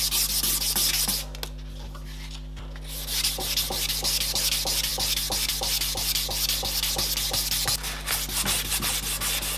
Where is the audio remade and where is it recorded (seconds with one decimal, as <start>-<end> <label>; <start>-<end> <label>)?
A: 0.0-9.6 recorded

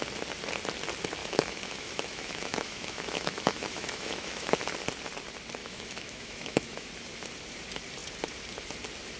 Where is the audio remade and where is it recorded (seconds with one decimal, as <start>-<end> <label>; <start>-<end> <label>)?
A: 0.0-1.2 recorded; 1.2-4.6 remade; 4.6-5.6 recorded; 5.6-6.9 remade; 6.9-9.2 recorded

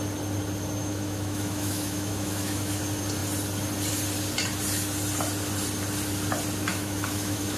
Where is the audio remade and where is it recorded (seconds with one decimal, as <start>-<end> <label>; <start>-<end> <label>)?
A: 0.0-0.8 recorded; 0.8-2.8 remade; 2.8-6.7 recorded; 6.7-7.6 remade